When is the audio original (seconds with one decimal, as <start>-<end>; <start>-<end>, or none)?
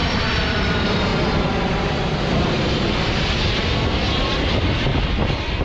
1.1-4.5; 4.9-5.6